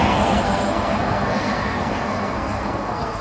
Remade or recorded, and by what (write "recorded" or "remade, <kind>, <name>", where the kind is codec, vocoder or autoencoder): remade, codec, SNAC